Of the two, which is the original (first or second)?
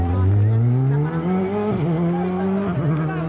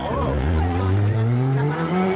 first